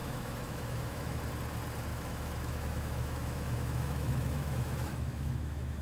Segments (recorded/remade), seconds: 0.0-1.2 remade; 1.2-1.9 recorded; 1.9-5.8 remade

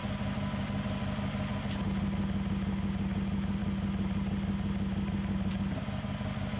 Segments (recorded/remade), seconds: 0.0-6.6 recorded

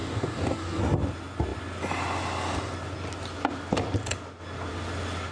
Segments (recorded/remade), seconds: 0.0-0.8 remade; 0.8-5.3 recorded

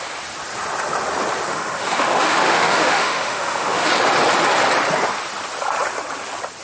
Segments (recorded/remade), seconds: 0.0-1.5 recorded; 1.5-3.9 remade; 3.9-6.6 recorded

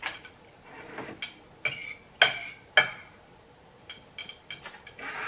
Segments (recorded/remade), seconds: 0.0-5.3 recorded

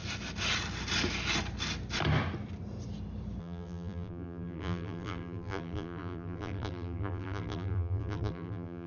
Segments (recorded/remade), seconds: 0.0-3.4 recorded; 3.4-8.9 remade

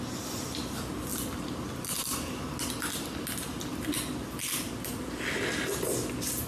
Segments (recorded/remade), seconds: 0.0-1.1 recorded; 1.1-1.7 remade; 1.7-3.7 recorded; 3.7-5.9 remade; 5.9-6.5 recorded